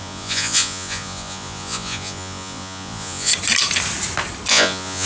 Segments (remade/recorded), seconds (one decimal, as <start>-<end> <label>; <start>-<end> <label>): 0.0-3.3 remade; 3.3-4.5 recorded; 4.5-5.1 remade